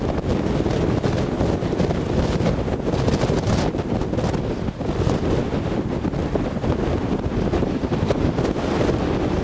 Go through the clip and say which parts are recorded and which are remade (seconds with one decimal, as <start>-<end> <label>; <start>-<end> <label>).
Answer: 0.0-9.4 recorded